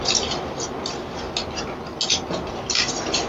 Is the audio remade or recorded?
recorded